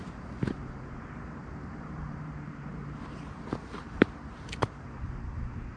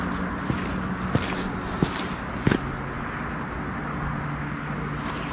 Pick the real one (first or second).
second